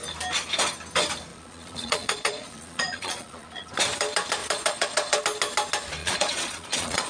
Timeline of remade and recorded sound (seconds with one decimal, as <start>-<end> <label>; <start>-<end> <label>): 0.0-1.3 recorded; 1.3-3.7 remade; 3.7-4.4 recorded; 4.4-5.2 remade; 5.2-6.0 recorded; 6.0-7.1 remade